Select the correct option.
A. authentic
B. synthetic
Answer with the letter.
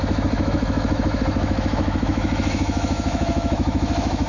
B